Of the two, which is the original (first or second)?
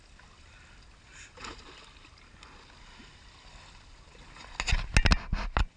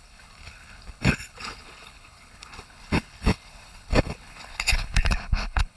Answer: first